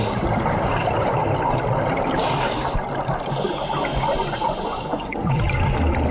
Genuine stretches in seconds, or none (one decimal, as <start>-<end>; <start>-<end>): 0.0-3.9; 5.4-6.1